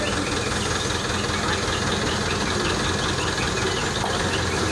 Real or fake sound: real